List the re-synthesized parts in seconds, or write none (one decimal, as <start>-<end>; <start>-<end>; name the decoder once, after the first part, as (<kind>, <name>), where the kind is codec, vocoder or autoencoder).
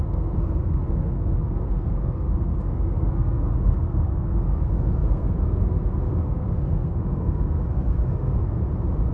0.0-8.6 (codec, SNAC)